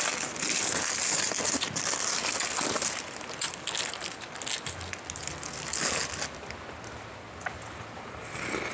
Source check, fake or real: real